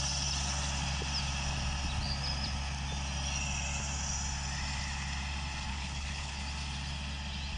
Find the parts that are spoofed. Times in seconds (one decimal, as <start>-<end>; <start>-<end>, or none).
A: 5.7-6.4